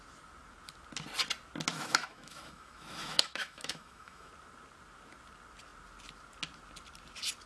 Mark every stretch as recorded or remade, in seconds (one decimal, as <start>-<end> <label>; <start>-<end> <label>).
0.0-1.7 recorded; 1.7-4.3 remade; 4.3-7.5 recorded